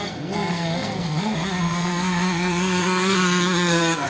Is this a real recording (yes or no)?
no